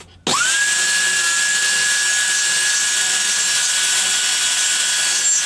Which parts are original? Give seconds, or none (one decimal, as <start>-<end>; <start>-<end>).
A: 0.0-5.5